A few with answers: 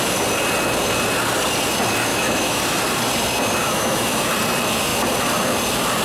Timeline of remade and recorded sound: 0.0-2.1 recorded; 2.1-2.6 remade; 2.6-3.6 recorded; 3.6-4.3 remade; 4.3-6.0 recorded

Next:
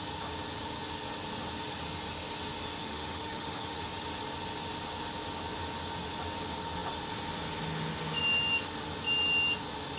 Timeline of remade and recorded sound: 0.0-2.8 recorded; 2.8-3.8 remade; 3.8-10.0 recorded